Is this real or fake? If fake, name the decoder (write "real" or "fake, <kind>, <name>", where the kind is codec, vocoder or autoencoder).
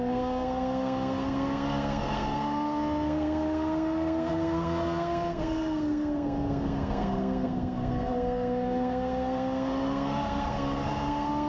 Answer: fake, codec, SNAC